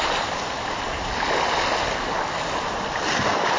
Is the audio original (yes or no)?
yes